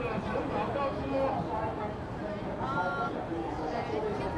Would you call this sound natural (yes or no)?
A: yes